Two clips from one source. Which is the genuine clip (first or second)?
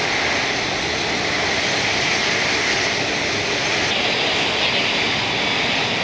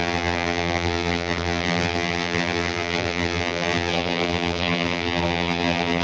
first